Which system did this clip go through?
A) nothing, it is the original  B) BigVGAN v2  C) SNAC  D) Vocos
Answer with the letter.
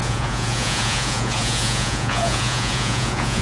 D